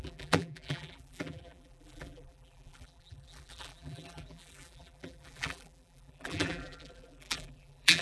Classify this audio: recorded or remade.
remade